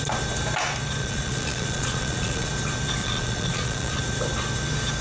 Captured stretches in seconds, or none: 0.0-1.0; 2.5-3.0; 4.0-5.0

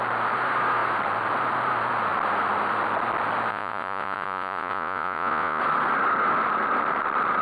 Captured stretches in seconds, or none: 0.0-3.5; 5.6-7.4

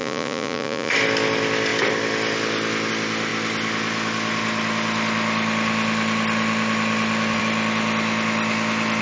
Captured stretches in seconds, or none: 0.9-9.0

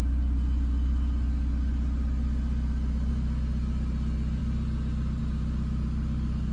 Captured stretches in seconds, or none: 0.0-6.5

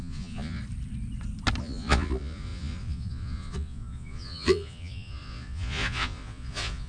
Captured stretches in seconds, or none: 0.6-1.6